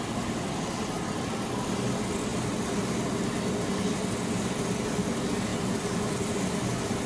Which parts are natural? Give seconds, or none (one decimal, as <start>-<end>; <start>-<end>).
0.0-7.1